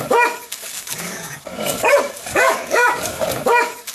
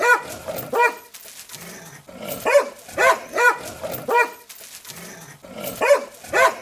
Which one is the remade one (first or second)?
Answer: first